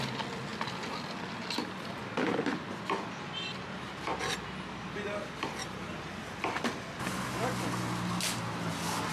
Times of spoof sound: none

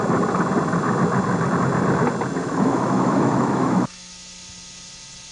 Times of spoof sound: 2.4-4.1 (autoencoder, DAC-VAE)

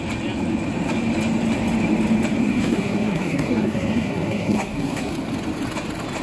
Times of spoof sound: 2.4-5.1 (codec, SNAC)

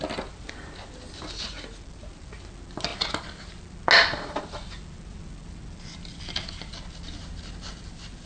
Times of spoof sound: none

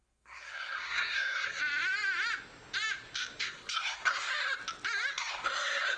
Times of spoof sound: 0.0-1.6 (codec, SNAC); 3.4-4.3; 5.1-6.0